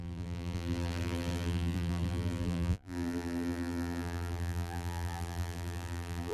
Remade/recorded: remade